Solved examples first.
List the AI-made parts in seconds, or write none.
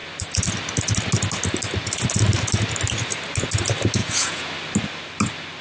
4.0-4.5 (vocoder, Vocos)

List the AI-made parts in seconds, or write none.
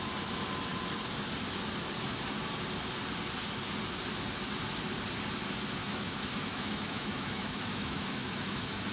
5.8-8.9 (autoencoder, DAC-VAE)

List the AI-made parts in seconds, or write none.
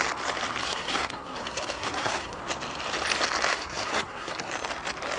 0.6-2.4 (codec, SNAC); 3.5-4.5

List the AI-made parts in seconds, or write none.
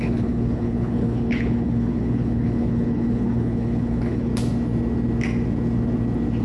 0.0-4.3 (codec, HILCodec)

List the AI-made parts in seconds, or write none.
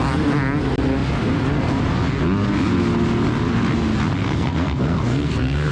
4.2-5.7 (codec, SNAC)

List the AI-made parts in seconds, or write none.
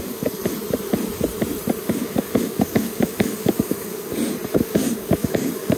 0.0-0.4 (codec, DAC); 1.8-4.1; 4.6-5.8